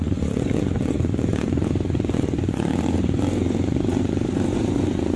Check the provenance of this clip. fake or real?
fake